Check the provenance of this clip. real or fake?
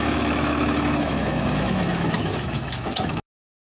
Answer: fake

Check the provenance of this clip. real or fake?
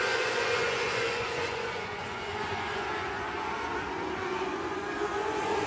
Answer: fake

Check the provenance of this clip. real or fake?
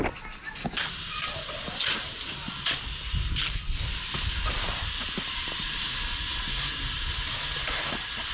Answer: real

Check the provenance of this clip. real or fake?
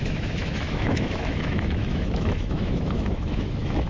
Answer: fake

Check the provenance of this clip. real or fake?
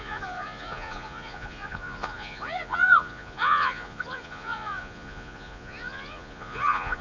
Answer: fake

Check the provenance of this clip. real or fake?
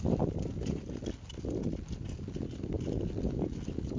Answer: real